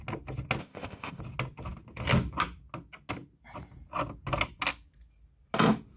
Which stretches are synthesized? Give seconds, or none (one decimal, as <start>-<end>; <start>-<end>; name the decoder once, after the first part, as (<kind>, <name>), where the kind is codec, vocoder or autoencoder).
0.6-1.2 (codec, ZipCodec)